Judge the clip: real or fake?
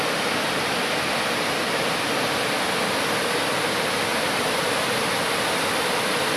real